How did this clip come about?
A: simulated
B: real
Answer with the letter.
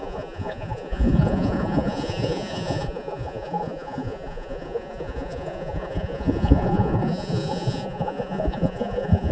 A